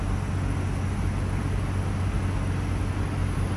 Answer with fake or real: real